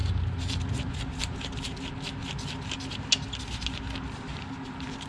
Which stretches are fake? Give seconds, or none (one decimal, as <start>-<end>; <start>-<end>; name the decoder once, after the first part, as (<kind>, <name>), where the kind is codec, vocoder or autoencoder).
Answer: none

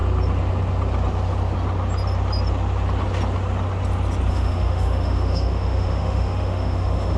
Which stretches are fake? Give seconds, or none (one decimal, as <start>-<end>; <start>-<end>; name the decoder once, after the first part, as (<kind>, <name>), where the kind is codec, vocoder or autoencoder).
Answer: 4.3-7.2 (autoencoder, DAC-VAE)

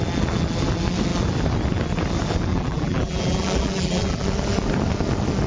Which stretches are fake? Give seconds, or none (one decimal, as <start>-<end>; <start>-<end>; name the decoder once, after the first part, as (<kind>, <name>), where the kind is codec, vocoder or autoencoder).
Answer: 2.5-4.3 (vocoder, BigVGAN v2)

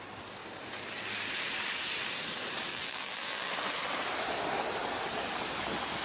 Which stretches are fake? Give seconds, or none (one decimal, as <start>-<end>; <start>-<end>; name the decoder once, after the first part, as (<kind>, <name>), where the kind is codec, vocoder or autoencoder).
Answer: 2.7-3.5 (vocoder, BigVGAN v2)

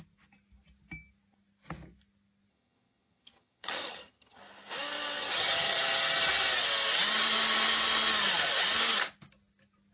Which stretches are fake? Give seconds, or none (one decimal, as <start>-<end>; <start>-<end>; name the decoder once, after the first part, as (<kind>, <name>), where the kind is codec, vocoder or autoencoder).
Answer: 2.5-4.4 (vocoder, HiFi-GAN); 5.2-5.8

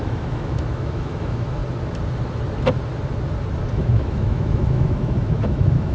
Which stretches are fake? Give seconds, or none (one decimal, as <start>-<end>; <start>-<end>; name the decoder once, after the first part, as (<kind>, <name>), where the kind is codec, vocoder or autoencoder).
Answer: 0.0-1.6 (autoencoder, DAC-VAE); 3.7-5.9

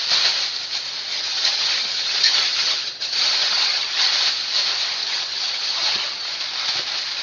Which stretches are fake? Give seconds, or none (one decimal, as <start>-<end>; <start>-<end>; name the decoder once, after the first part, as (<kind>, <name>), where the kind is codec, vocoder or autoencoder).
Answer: 1.1-4.1 (vocoder, HiFi-GAN); 5.0-6.3

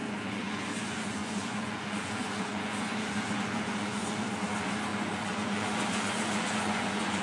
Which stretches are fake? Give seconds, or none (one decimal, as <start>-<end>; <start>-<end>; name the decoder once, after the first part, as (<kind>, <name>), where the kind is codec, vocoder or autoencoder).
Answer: 0.0-4.3 (vocoder, Vocos); 4.9-7.2